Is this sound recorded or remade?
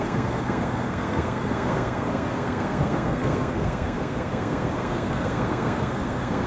remade